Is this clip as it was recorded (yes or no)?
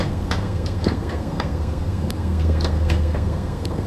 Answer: no